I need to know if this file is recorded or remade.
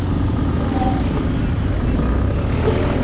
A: recorded